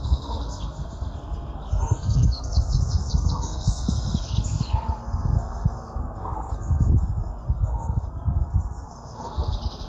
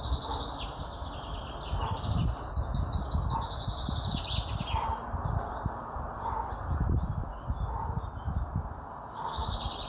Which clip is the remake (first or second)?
first